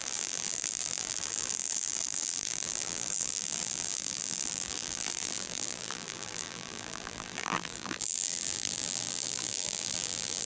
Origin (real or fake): fake